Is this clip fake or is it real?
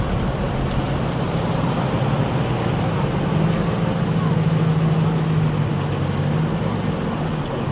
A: real